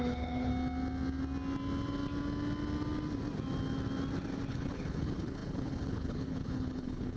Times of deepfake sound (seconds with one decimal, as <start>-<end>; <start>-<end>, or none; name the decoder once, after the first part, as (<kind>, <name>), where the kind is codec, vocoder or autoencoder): 0.0-0.5 (codec, HILCodec); 4.5-7.2